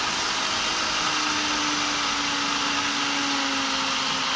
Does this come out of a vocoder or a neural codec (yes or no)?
no